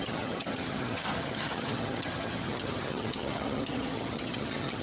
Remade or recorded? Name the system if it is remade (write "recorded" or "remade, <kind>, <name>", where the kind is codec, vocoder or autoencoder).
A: remade, vocoder, HiFi-GAN